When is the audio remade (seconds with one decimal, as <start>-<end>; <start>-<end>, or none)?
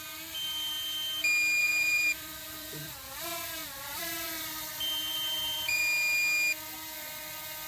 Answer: 1.6-5.8